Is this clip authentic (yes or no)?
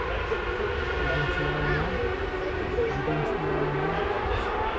yes